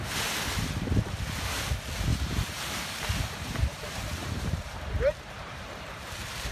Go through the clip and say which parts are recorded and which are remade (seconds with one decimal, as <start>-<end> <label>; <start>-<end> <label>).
0.0-2.1 recorded; 2.1-6.0 remade; 6.0-6.5 recorded